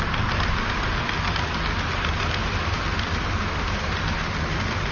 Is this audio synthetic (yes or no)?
no